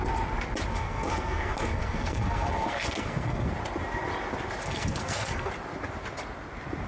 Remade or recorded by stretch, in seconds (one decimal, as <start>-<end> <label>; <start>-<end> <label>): 0.0-0.7 recorded; 0.7-3.5 remade; 3.5-4.6 recorded; 4.6-5.5 remade; 5.5-6.9 recorded